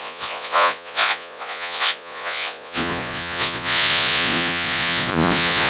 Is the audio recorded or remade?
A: remade